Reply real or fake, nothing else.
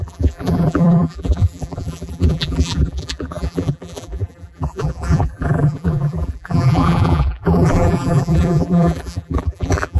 fake